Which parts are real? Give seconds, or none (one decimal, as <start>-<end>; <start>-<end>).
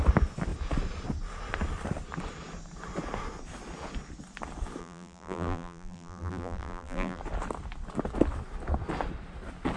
0.0-4.8; 7.2-9.8